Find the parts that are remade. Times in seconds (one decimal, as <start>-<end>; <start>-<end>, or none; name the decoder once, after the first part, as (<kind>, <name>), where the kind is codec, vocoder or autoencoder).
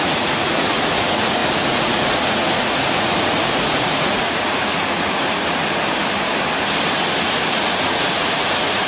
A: 0.0-5.6 (vocoder, Vocos); 7.2-8.9